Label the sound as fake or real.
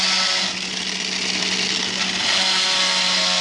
real